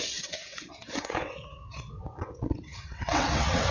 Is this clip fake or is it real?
fake